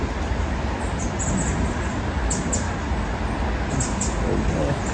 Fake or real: real